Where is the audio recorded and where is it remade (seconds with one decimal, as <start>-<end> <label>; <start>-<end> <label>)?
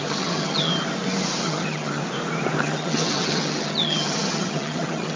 0.0-0.7 remade; 0.7-1.4 recorded; 1.4-2.0 remade; 2.0-2.6 recorded; 2.6-5.2 remade